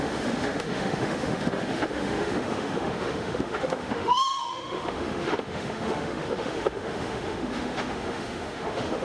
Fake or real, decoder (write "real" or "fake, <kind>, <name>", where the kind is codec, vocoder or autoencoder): fake, autoencoder, DAC-VAE